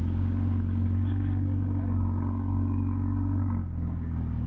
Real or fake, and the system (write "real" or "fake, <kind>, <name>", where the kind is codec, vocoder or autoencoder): fake, codec, DAC